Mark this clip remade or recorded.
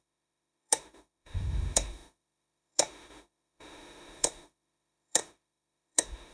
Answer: remade